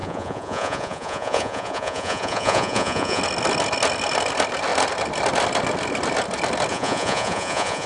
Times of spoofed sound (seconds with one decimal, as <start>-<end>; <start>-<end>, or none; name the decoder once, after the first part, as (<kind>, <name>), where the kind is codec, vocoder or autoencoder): 0.0-3.2 (vocoder, Vocos); 6.7-7.9